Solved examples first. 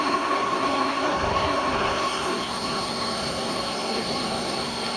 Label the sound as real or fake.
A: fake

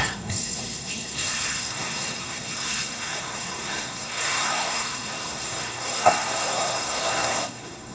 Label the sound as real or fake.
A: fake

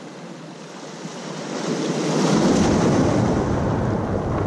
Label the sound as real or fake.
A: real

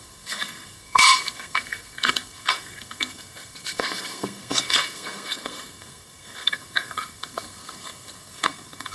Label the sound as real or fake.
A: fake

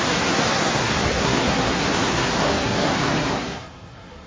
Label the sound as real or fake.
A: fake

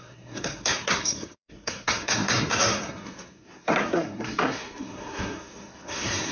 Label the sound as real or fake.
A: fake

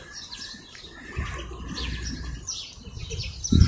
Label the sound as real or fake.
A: real